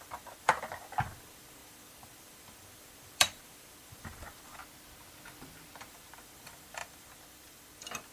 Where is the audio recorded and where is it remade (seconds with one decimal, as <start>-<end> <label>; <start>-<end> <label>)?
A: 0.0-4.6 remade; 4.6-5.9 recorded; 5.9-8.1 remade